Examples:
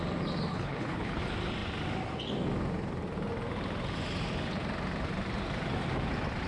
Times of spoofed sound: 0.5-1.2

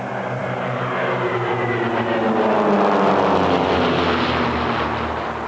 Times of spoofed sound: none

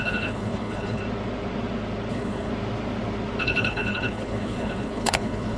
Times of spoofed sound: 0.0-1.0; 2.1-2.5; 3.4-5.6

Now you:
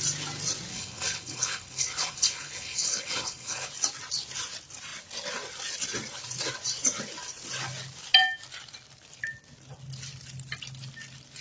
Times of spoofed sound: 0.7-3.7

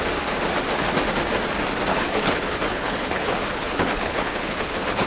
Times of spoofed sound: 1.9-5.1

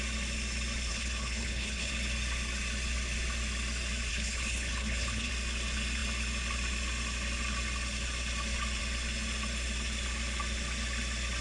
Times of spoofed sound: 0.9-1.9; 4.1-5.3